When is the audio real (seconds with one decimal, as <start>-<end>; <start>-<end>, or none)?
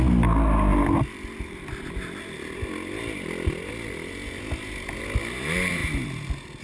0.0-6.6